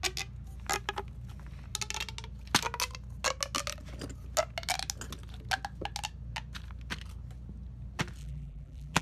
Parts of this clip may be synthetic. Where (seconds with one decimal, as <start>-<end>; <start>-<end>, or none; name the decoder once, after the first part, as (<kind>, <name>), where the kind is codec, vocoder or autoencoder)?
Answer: 8.2-9.0 (vocoder, BigVGAN v2)